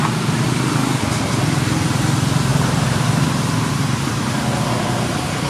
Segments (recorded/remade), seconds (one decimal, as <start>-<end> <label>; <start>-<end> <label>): 0.0-2.5 recorded; 2.5-4.6 remade; 4.6-5.5 recorded